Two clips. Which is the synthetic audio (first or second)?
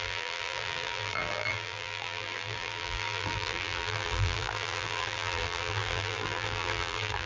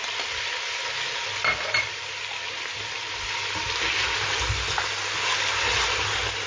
first